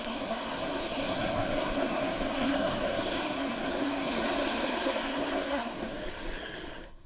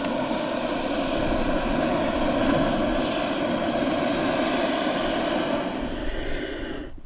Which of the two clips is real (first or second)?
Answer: second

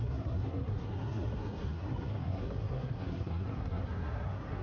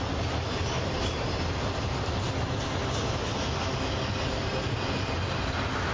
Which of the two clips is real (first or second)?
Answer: second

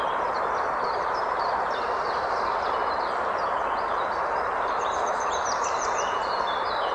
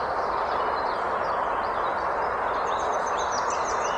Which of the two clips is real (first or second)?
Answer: second